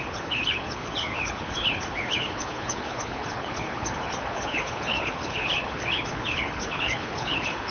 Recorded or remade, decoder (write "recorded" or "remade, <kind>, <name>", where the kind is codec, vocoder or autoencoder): remade, codec, HILCodec